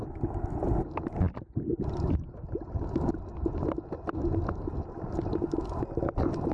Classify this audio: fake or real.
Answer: real